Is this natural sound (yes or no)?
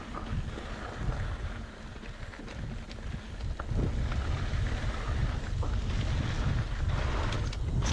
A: yes